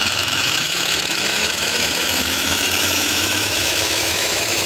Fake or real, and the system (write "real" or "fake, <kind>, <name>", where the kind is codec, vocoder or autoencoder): fake, autoencoder, DAC-VAE